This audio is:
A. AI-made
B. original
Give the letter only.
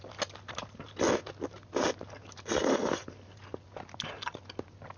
B